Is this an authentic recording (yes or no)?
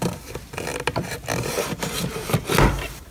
yes